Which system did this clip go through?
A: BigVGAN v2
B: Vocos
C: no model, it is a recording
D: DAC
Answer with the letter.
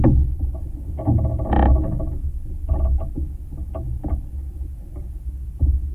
C